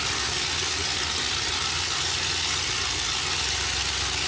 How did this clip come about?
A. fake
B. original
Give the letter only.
B